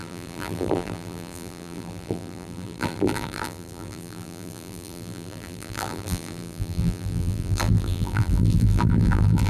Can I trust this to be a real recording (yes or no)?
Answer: no